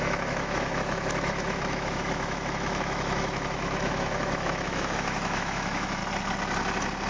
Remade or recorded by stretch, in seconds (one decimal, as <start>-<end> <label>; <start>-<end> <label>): 0.0-6.0 remade; 6.0-7.1 recorded